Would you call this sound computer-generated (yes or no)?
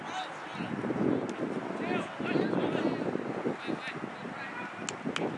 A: no